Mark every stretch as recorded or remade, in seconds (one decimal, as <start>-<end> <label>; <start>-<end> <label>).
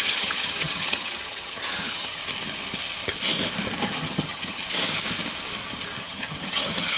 0.0-2.2 remade; 2.2-3.9 recorded; 3.9-4.6 remade; 4.6-6.0 recorded; 6.0-7.0 remade